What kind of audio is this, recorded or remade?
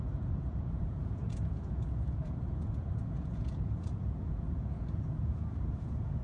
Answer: remade